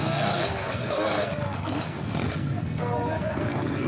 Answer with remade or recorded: remade